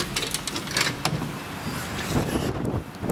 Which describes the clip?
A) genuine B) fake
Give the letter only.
A